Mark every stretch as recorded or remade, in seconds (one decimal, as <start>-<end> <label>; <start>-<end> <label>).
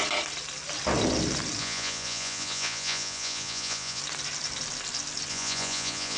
0.0-1.6 recorded; 1.6-4.0 remade; 4.0-5.3 recorded; 5.3-6.2 remade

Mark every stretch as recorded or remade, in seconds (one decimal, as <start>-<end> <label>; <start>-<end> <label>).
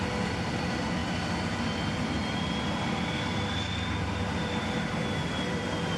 0.0-6.0 recorded